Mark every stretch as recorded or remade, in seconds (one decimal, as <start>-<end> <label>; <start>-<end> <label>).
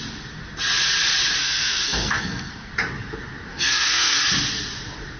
0.0-1.4 recorded; 1.4-2.7 remade; 2.7-3.5 recorded; 3.5-4.2 remade; 4.2-5.2 recorded